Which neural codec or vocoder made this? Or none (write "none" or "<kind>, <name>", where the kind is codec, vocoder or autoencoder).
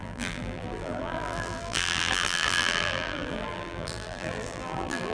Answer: vocoder, BigVGAN v2